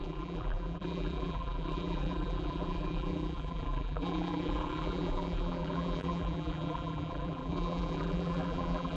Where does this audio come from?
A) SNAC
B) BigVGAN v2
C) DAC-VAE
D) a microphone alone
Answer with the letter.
B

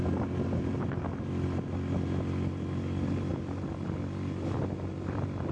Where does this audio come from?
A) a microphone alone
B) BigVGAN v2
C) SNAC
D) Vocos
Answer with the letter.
A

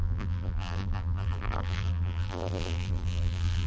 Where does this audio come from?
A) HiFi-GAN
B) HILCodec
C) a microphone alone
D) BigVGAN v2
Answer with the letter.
D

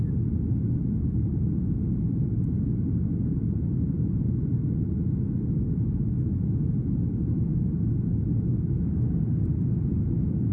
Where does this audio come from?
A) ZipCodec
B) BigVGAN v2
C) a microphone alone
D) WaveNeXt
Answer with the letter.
C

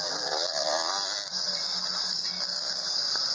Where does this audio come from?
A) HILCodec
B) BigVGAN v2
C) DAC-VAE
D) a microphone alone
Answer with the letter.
D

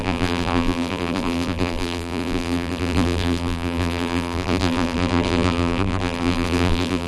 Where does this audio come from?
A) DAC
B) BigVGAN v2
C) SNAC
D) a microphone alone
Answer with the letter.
B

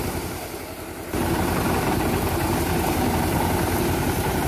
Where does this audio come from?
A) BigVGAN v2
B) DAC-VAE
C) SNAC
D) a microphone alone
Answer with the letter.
D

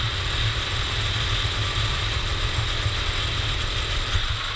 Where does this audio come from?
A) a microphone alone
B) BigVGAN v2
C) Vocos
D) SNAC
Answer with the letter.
A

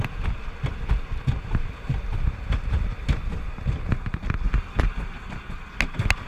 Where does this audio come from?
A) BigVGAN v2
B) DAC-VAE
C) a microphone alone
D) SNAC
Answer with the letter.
C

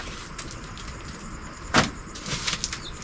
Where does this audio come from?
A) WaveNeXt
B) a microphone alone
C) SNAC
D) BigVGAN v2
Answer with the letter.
B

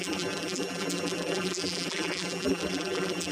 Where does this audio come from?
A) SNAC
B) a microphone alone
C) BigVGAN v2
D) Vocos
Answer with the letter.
C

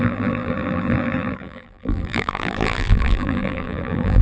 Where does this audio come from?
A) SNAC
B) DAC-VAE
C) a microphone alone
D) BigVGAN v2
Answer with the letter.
D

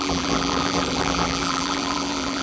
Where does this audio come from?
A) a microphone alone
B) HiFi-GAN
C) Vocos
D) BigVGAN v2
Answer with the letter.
D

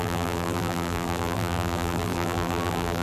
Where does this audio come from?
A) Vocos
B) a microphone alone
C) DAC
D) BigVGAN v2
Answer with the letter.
D